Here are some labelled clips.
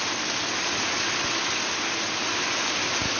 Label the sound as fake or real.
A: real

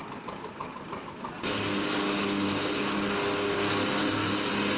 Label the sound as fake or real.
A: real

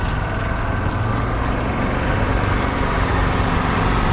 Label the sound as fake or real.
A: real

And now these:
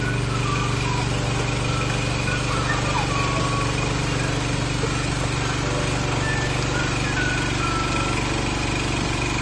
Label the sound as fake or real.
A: real